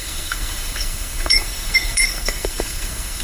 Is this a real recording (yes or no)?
no